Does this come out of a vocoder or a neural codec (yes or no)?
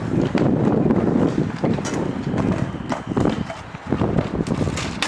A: no